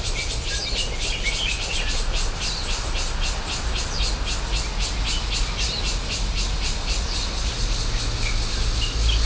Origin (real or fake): real